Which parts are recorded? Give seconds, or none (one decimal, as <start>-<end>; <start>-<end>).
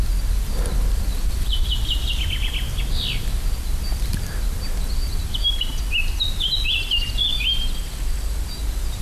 0.0-1.1; 5.7-9.0